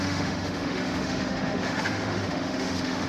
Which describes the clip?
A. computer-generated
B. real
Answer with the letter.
A